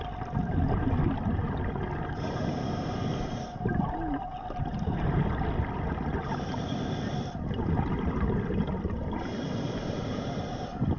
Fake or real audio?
real